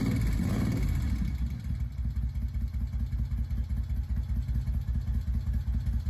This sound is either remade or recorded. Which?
recorded